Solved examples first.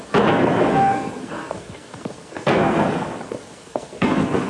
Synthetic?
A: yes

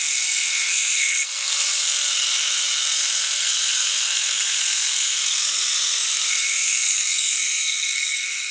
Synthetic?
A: yes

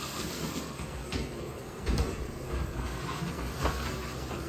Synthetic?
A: yes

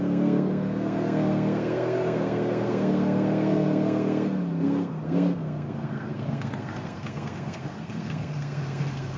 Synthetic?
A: yes